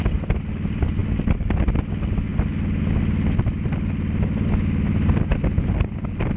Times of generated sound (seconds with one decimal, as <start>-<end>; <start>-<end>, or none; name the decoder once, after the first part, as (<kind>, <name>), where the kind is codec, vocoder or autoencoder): none